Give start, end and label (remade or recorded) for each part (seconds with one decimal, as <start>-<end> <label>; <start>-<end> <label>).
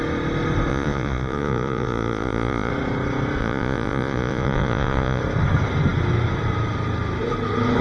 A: 0.0-0.7 recorded; 0.7-2.7 remade; 2.7-3.4 recorded; 3.4-5.2 remade; 5.2-7.8 recorded